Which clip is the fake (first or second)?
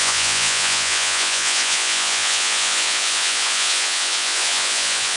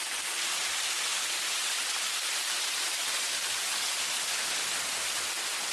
first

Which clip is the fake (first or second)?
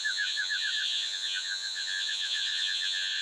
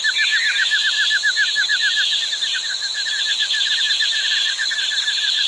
first